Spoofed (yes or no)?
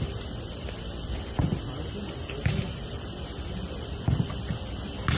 no